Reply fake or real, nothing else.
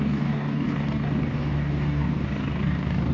fake